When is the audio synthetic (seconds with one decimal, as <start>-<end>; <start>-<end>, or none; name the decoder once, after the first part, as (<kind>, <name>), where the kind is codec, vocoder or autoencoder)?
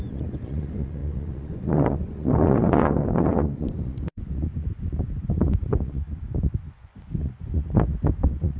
0.0-8.6 (vocoder, Vocos)